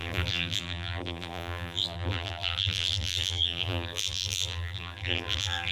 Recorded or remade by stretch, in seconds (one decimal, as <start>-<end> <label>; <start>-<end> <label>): 0.0-5.7 remade